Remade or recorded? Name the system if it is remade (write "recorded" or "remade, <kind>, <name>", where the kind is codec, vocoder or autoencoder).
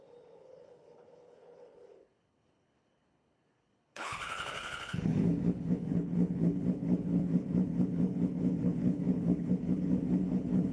remade, codec, HILCodec